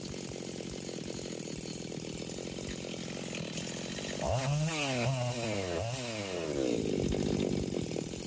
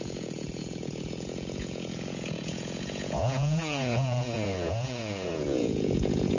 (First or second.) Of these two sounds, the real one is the first